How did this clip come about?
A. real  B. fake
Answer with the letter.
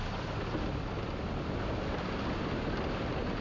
A